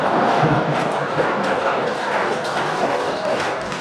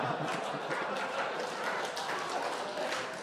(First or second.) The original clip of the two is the second